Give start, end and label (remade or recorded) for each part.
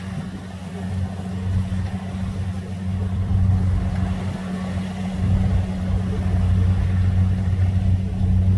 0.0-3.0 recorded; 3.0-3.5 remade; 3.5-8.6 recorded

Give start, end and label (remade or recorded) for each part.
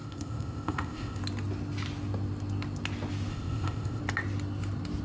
0.0-1.2 remade; 1.2-3.3 recorded; 3.3-4.0 remade; 4.0-5.0 recorded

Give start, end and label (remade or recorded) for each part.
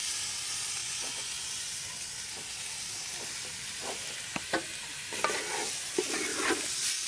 0.0-0.8 recorded; 0.8-1.7 remade; 1.7-7.1 recorded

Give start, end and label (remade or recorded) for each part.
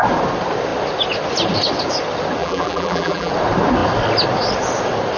0.0-2.4 recorded; 2.4-3.3 remade; 3.3-5.2 recorded